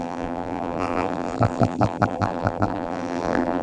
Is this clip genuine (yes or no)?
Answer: no